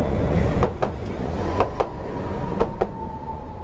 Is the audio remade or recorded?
remade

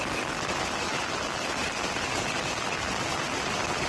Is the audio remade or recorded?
recorded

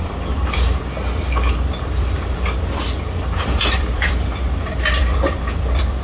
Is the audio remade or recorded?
remade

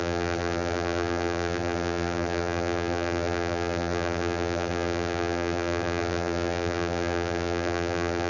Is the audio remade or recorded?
remade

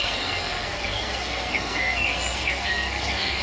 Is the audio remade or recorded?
remade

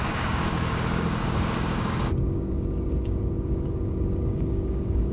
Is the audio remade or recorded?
remade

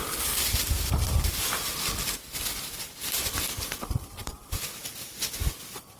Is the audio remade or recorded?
recorded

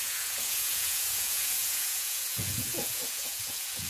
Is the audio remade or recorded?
remade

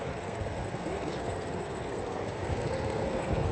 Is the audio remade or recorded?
remade